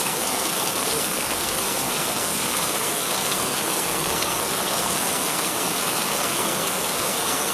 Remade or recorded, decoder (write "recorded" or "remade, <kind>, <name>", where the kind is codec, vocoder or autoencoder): remade, codec, SNAC